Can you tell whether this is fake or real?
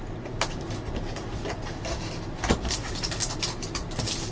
real